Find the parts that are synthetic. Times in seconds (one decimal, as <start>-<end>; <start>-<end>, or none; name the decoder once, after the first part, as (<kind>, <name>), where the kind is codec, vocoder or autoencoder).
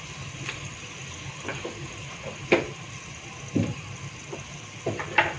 none